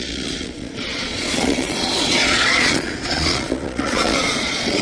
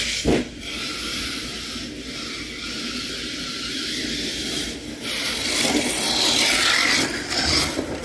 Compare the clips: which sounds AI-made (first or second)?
first